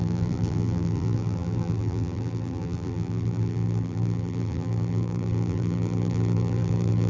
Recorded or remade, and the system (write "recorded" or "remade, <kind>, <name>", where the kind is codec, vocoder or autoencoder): remade, vocoder, BigVGAN v2